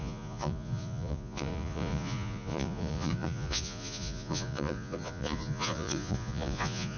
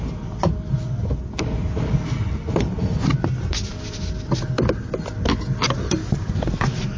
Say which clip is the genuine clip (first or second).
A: second